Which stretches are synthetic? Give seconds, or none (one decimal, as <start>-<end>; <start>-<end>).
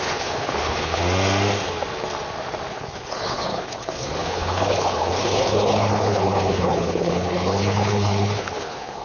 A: 0.0-1.0; 2.7-9.0